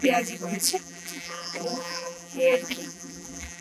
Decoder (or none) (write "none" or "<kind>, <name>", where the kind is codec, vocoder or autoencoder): vocoder, BigVGAN v2